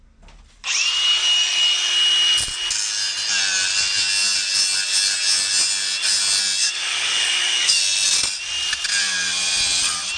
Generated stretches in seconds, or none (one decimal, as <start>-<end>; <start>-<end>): 6.6-7.8